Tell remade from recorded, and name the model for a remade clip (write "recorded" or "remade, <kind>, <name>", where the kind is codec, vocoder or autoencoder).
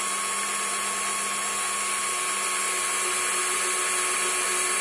recorded